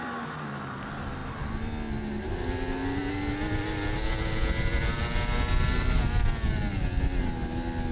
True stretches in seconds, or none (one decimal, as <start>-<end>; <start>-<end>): 0.0-7.9